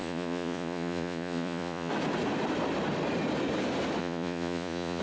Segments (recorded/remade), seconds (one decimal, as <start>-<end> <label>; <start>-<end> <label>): 0.0-1.9 remade; 1.9-4.0 recorded; 4.0-5.0 remade